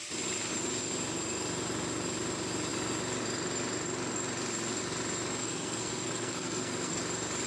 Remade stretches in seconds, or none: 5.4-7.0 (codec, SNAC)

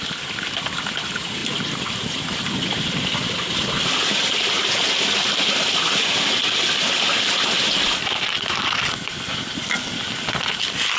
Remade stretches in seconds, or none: none

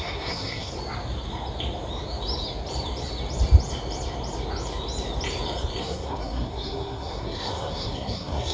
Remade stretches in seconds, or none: 0.0-0.7 (codec, SNAC); 5.8-8.5

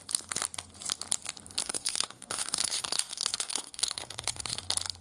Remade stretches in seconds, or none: 1.6-4.6 (codec, SNAC)

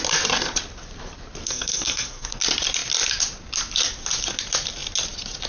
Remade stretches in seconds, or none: 1.4-2.4 (codec, SNAC)